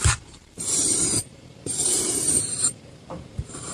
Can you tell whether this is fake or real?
fake